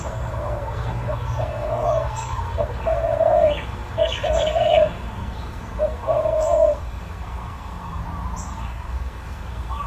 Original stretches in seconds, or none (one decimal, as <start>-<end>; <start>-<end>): 8.0-8.5

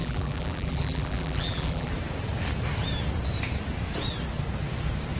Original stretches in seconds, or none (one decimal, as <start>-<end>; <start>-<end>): 1.9-5.2

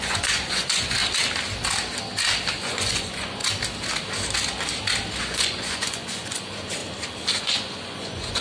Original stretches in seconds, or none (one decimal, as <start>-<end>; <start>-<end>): 1.0-2.6; 3.4-5.2; 6.8-7.4

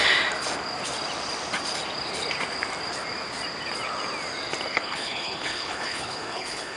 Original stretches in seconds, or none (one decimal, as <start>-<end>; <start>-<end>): 0.0-4.7

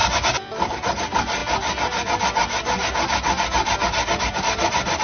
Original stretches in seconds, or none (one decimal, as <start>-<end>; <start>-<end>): 1.4-4.4